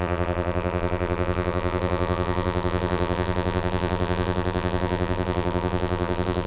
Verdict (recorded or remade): remade